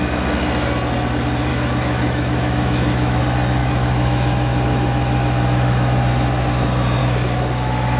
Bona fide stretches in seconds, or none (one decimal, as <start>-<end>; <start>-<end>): 0.0-1.5; 3.2-3.6; 6.1-7.0

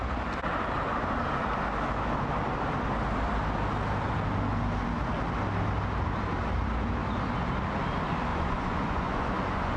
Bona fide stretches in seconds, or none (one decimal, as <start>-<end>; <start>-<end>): 0.0-8.3

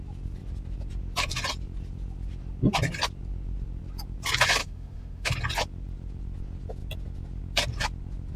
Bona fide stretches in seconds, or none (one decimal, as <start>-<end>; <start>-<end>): 0.0-4.6; 5.3-8.4

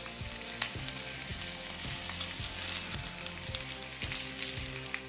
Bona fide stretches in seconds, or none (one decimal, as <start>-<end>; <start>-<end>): 0.0-5.1

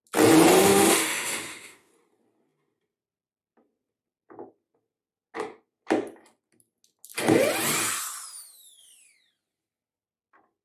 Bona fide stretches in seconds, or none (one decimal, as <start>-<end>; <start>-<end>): 0.0-0.6; 1.9-10.6

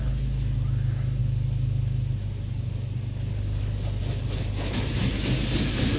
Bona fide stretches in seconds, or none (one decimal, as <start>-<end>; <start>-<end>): 0.0-6.0